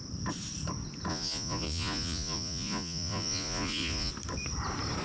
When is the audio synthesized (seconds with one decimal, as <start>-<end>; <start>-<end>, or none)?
1.1-4.1